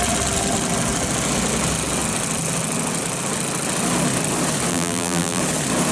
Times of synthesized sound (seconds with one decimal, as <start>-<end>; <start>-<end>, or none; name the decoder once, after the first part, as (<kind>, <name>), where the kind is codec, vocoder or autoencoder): 4.7-5.4 (vocoder, BigVGAN v2)